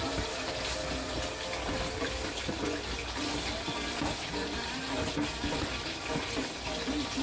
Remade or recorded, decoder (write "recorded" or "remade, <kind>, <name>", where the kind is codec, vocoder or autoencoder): recorded